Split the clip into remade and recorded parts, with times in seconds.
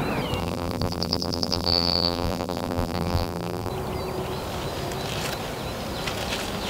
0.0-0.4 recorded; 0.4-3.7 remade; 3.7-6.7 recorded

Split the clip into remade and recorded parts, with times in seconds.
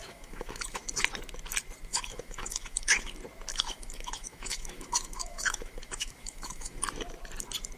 0.0-0.8 remade; 0.8-1.9 recorded; 1.9-3.1 remade; 3.1-3.5 recorded; 3.5-6.8 remade; 6.8-7.8 recorded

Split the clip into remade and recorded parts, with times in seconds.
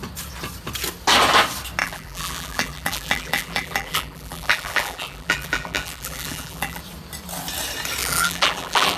0.0-1.8 recorded; 1.8-6.8 remade; 6.8-8.0 recorded; 8.0-9.0 remade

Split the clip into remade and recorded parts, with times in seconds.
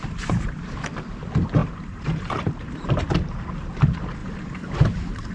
0.0-1.6 recorded; 1.6-2.7 remade; 2.7-4.2 recorded; 4.2-5.3 remade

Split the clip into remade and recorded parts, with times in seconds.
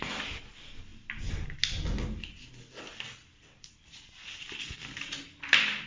0.0-5.9 recorded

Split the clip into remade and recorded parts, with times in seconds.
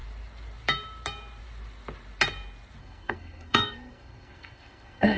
0.0-2.8 recorded; 2.8-5.2 remade